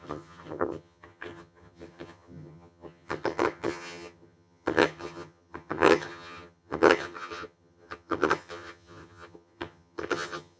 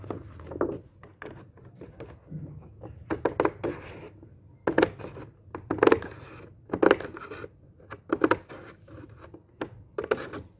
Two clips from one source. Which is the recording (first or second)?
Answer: second